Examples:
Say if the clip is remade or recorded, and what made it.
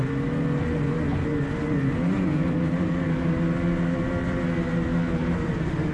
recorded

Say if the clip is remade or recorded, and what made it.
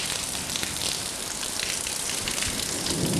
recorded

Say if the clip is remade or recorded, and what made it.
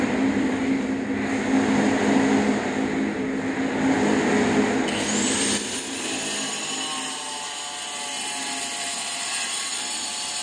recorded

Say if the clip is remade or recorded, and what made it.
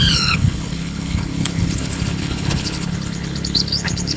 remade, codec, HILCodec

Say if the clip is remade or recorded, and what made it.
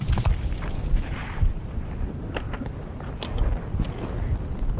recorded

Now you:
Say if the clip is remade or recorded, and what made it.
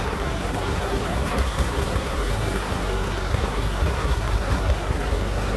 remade, codec, SNAC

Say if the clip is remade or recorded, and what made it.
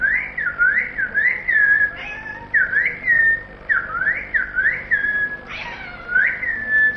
recorded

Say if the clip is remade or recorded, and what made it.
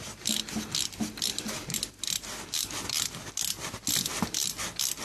recorded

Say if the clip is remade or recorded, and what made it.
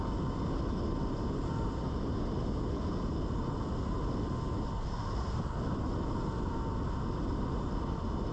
recorded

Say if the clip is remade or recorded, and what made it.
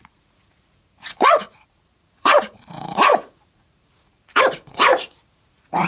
remade, vocoder, Vocos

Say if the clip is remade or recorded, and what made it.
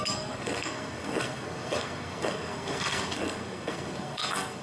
remade, codec, SNAC